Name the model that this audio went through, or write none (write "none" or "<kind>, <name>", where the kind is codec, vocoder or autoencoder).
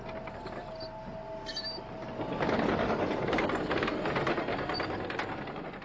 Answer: none